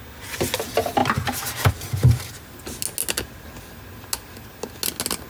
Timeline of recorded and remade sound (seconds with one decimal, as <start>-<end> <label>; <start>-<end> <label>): 0.0-5.3 recorded